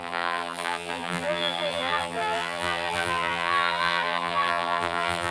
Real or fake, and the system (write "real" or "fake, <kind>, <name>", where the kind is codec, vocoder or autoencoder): fake, vocoder, BigVGAN v2